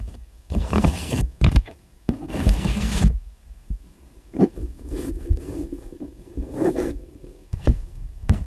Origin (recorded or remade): remade